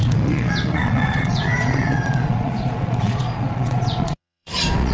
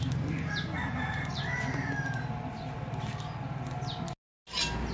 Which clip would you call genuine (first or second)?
second